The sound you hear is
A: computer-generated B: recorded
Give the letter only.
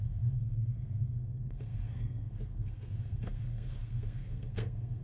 A